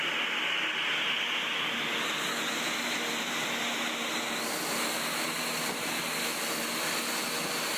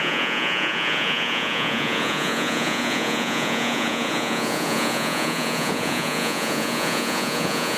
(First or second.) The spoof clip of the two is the second